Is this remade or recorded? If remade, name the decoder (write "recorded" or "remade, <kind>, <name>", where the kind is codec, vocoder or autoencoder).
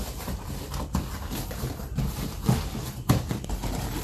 recorded